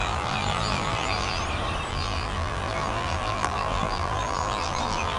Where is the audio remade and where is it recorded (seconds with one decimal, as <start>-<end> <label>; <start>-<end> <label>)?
0.0-1.4 remade; 1.4-1.9 recorded; 1.9-5.2 remade